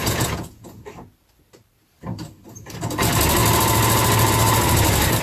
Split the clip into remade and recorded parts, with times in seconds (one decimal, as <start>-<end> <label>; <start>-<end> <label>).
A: 0.0-0.8 remade; 0.8-5.2 recorded